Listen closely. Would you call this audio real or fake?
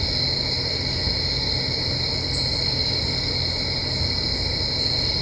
real